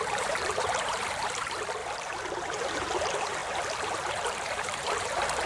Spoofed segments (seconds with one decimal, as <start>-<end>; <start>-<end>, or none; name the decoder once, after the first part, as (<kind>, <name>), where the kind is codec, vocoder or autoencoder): 0.0-3.4 (vocoder, BigVGAN v2); 3.9-5.5